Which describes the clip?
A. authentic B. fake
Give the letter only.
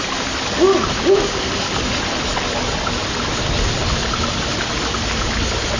A